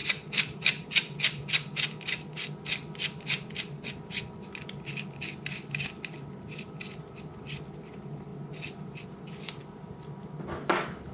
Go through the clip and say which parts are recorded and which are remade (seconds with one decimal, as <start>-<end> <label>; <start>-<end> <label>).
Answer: 0.0-11.1 recorded